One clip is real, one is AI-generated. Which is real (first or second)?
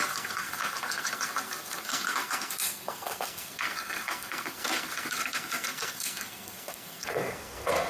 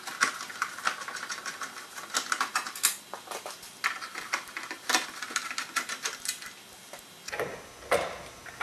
second